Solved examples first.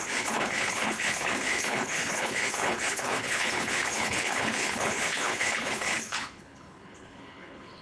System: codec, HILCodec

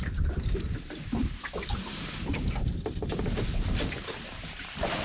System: vocoder, BigVGAN v2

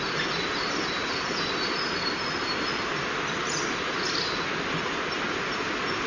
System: none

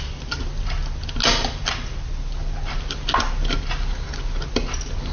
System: none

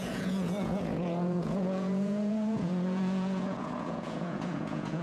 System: vocoder, Vocos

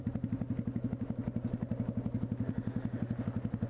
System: none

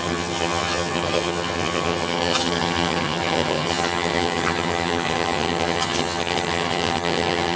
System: vocoder, HiFi-GAN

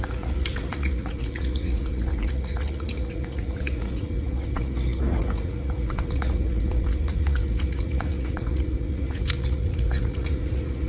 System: vocoder, Vocos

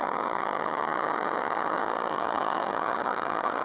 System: vocoder, HiFi-GAN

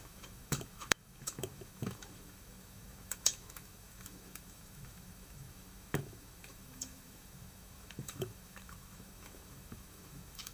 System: autoencoder, DAC-VAE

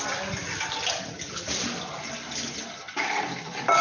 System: none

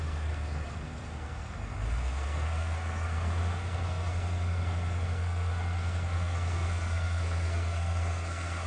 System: codec, SNAC